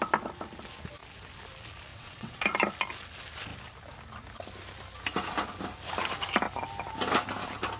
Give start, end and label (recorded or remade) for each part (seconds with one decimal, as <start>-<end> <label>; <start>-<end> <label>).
0.0-1.9 recorded; 1.9-2.4 remade; 2.4-7.8 recorded